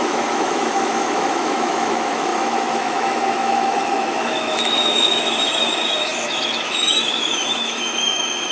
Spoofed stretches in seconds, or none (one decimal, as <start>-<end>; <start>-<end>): 0.0-8.5